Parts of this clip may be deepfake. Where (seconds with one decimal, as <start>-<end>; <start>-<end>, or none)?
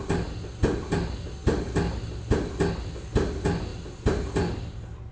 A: none